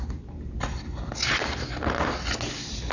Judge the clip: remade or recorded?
recorded